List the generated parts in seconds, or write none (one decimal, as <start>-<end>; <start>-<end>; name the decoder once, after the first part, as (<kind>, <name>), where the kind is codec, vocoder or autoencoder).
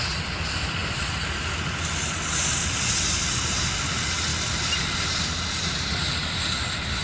none